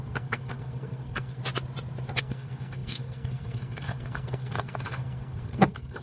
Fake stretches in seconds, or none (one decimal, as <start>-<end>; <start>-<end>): 0.0-1.4; 2.2-6.0